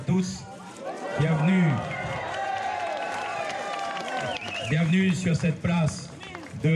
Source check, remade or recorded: remade